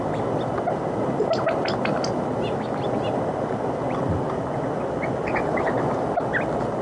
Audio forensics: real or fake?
real